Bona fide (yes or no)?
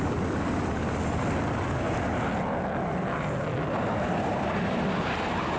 yes